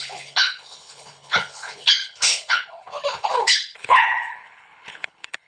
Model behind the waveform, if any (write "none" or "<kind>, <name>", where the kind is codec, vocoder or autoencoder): codec, HILCodec